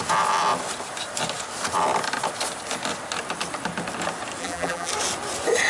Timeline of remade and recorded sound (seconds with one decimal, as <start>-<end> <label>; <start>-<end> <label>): 0.0-4.4 recorded; 4.4-4.9 remade; 4.9-5.7 recorded